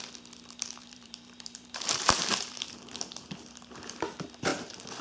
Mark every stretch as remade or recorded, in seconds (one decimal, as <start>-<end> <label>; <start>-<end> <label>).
0.0-0.8 recorded; 0.8-2.7 remade; 2.7-4.5 recorded; 4.5-5.0 remade